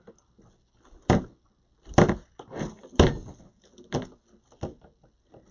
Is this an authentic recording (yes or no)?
yes